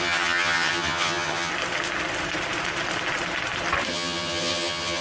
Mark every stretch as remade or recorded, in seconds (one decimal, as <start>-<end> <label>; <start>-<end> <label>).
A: 0.0-1.5 remade; 1.5-3.9 recorded; 3.9-5.0 remade